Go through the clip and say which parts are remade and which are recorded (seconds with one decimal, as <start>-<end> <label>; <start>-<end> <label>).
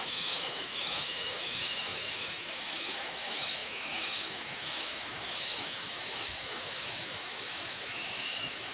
0.0-8.7 remade